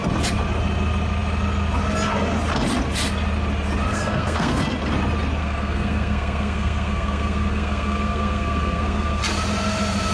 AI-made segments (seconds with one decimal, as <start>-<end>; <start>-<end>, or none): 3.9-4.6; 5.4-9.2